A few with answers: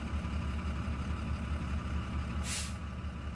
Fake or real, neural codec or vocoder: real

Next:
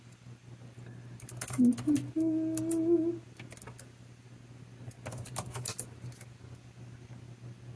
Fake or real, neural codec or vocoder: real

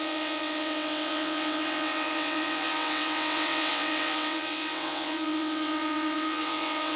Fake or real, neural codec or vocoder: fake, vocoder, WaveNeXt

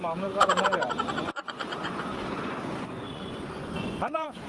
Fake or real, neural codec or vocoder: fake, vocoder, Vocos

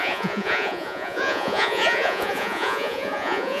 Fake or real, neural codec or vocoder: fake, vocoder, Vocos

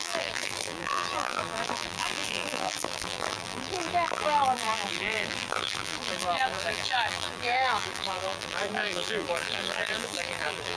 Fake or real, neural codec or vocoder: fake, vocoder, BigVGAN v2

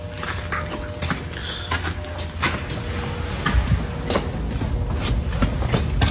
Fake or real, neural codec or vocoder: real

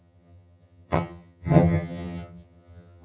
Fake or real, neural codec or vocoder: fake, vocoder, HiFi-GAN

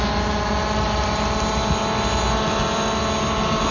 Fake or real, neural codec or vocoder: real